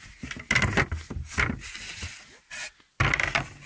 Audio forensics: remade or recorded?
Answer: recorded